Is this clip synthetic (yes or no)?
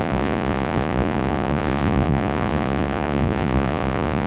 yes